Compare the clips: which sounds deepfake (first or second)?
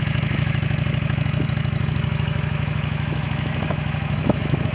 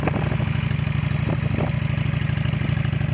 first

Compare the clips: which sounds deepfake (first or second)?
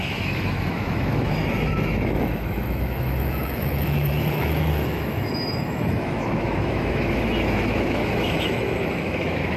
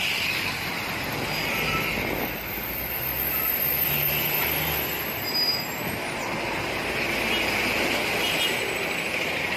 first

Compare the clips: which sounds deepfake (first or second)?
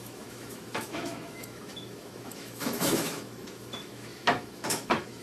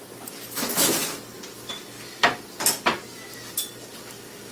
first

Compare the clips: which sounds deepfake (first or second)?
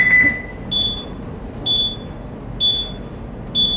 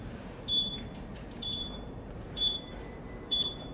second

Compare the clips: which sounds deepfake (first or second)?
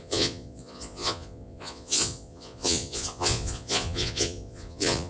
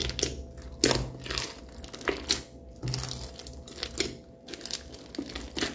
first